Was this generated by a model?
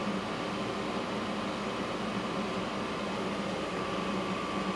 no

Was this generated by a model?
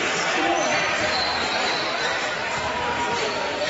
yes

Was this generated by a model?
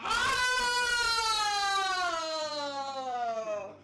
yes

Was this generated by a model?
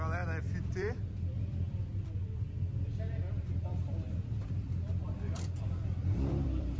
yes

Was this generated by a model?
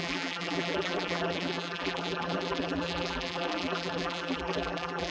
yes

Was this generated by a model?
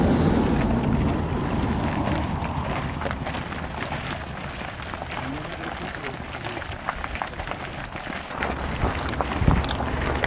yes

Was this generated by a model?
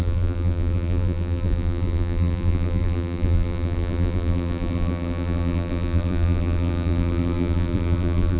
yes